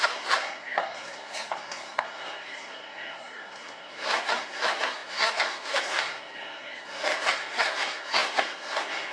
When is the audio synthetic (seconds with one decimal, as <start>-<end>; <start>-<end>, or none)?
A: 0.0-9.1